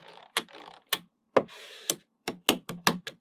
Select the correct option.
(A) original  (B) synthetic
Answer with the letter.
B